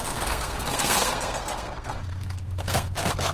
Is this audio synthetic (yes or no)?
yes